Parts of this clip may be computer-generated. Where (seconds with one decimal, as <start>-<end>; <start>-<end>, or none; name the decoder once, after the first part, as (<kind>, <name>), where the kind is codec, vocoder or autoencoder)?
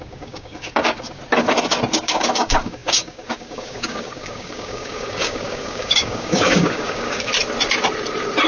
0.0-1.2 (codec, DAC); 1.9-7.3